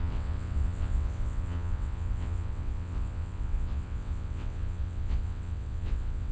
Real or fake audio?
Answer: fake